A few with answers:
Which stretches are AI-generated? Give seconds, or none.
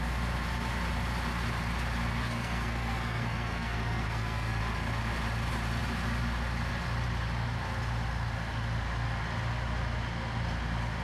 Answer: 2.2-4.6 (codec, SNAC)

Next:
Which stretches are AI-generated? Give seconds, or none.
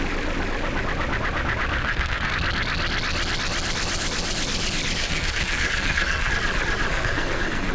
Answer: 1.8-2.3 (codec, SNAC); 5.0-6.3; 6.9-7.7